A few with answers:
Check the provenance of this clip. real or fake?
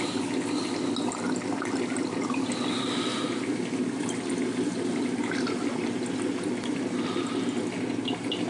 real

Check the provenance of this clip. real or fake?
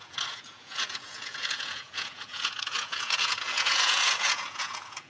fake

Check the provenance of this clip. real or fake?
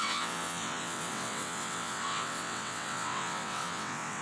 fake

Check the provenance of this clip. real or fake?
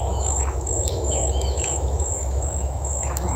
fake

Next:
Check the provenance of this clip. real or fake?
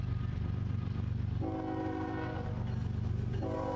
real